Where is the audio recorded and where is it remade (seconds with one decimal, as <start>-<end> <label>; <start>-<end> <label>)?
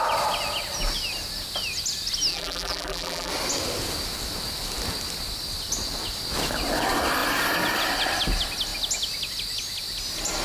0.0-2.3 recorded; 2.3-3.3 remade; 3.3-10.4 recorded